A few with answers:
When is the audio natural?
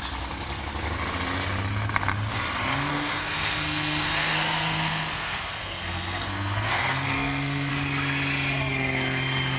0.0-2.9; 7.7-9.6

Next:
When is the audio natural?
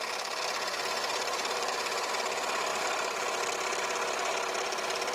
0.0-1.0; 2.1-2.7; 3.4-5.1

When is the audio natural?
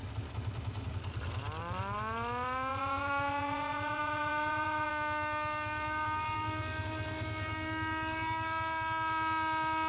0.0-2.7; 4.9-9.9